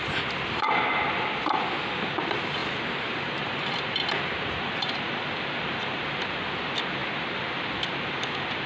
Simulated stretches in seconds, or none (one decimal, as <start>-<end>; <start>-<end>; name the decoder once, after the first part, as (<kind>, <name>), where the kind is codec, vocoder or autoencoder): none